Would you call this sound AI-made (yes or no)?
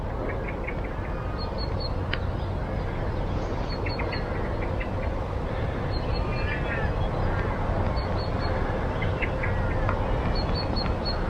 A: no